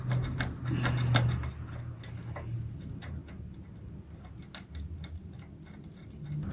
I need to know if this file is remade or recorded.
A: recorded